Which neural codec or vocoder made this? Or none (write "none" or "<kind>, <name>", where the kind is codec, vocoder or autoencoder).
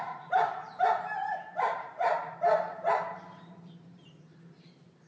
vocoder, BigVGAN v2